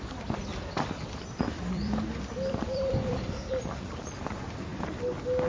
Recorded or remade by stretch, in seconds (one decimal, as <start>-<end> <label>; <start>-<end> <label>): 0.0-0.5 recorded; 0.5-3.6 remade; 3.6-5.5 recorded